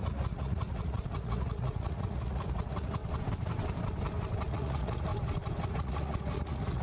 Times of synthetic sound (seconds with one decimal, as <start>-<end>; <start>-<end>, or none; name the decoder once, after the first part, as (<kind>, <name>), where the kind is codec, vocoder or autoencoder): 0.0-3.0 (vocoder, Vocos); 4.5-5.1; 5.7-6.8